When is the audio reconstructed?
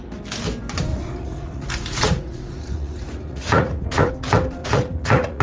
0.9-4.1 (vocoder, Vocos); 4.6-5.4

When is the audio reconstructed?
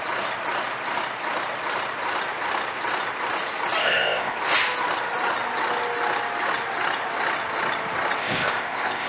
3.8-4.4 (codec, ZipCodec); 8.2-9.1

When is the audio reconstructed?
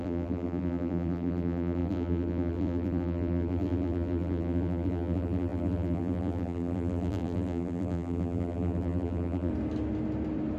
0.0-9.5 (vocoder, BigVGAN v2)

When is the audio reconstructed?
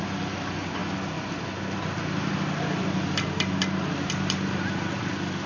none